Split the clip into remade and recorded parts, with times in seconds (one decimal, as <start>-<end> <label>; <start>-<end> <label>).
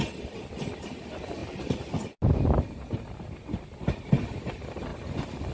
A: 0.0-1.4 recorded; 1.4-4.0 remade; 4.0-5.5 recorded